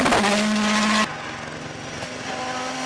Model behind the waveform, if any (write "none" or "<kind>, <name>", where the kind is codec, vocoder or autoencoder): none